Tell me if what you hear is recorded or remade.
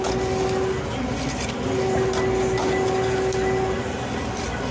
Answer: recorded